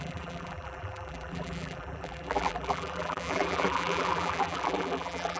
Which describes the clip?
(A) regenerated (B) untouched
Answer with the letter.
A